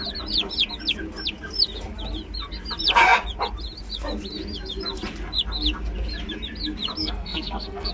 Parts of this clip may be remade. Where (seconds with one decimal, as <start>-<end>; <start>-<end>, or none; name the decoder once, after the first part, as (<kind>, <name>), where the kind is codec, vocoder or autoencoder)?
7.0-7.9 (codec, SNAC)

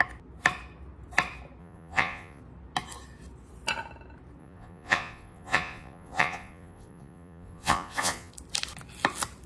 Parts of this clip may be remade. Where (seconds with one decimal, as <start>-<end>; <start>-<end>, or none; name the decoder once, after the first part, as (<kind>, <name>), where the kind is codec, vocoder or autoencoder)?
1.6-2.4 (vocoder, Vocos); 4.4-8.3

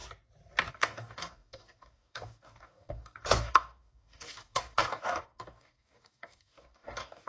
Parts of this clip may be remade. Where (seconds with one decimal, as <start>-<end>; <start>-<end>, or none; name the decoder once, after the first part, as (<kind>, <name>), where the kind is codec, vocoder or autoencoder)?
0.7-7.3 (codec, DAC)

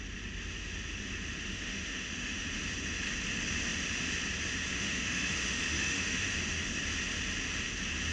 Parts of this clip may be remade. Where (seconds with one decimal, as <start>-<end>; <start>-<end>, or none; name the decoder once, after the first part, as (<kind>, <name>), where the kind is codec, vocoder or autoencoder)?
1.5-2.6 (autoencoder, DAC-VAE); 4.7-6.7

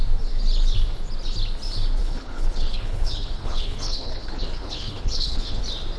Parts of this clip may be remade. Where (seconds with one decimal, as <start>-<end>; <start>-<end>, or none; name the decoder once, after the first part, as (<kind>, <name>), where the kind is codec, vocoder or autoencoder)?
2.0-5.6 (codec, HILCodec)

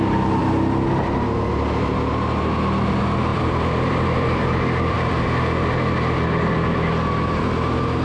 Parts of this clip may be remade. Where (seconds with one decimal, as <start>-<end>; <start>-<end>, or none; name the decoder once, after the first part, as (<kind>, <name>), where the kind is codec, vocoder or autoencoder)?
3.3-5.1 (vocoder, BigVGAN v2)

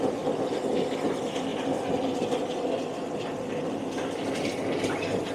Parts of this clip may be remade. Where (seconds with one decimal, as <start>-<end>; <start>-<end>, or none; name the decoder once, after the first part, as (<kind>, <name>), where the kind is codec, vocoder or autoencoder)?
none